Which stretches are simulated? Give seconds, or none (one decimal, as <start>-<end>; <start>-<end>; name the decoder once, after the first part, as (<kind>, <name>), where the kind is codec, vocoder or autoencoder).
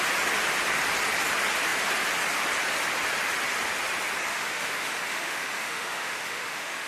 4.3-6.9 (autoencoder, DAC-VAE)